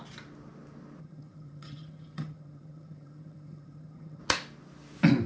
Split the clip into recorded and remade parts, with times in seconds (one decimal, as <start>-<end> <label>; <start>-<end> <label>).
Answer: 0.0-1.0 recorded; 1.0-4.2 remade; 4.2-5.3 recorded